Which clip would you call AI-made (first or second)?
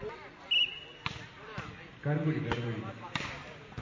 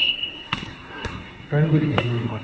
second